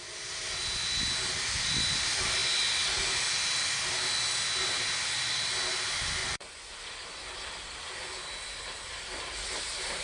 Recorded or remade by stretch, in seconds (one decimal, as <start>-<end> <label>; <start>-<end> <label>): 0.0-6.2 recorded; 6.2-6.7 remade; 6.7-10.0 recorded